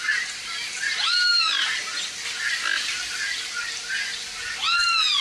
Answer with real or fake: real